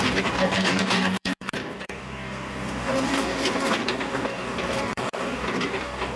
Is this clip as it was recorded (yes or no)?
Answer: no